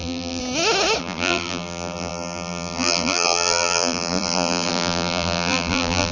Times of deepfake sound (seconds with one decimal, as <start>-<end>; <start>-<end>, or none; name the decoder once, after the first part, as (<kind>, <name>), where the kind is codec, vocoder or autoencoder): 0.0-0.4 (vocoder, BigVGAN v2); 1.0-6.1